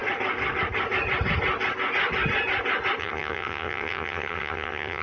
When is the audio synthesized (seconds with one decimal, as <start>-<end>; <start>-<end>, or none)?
3.0-5.0